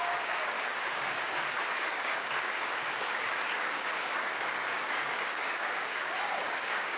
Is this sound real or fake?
fake